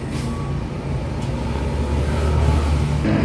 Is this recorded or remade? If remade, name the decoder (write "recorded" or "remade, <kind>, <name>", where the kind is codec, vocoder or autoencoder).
recorded